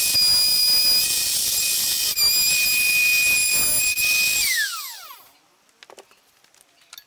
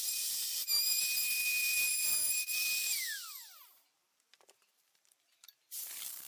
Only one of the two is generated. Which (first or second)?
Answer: second